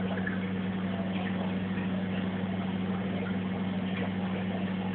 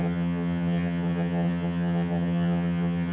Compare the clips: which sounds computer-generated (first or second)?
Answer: second